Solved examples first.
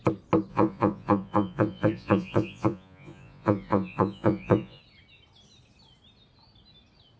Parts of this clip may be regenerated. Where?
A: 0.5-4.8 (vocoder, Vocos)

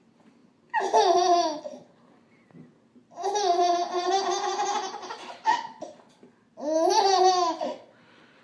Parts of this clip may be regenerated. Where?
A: none

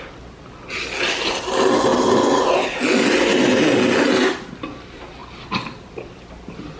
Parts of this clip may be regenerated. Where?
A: none

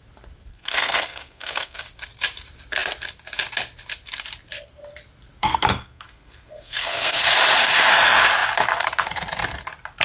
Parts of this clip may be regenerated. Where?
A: 0.5-1.8 (codec, SNAC); 5.4-7.2